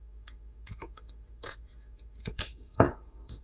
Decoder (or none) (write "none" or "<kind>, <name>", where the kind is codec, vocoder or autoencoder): autoencoder, DAC-VAE